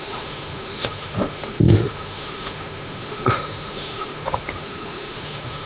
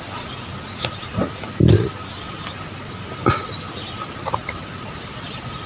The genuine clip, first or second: second